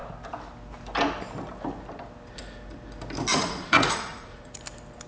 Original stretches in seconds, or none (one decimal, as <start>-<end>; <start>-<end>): 0.0-3.3; 4.6-5.1

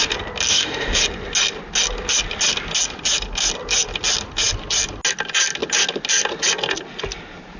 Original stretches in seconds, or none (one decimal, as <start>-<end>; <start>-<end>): 0.0-0.5; 1.0-7.6